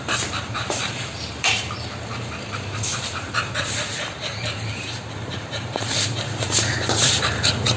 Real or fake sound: fake